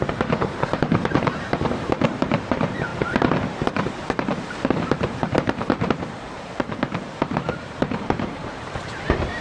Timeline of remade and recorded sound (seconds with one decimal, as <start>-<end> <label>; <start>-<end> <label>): 0.0-2.9 remade; 2.9-3.5 recorded; 3.5-9.4 remade